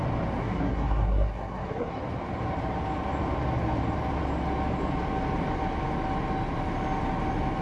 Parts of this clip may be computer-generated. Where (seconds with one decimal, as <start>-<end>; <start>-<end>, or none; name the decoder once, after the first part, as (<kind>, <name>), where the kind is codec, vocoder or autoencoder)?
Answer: 0.4-2.0 (codec, SNAC)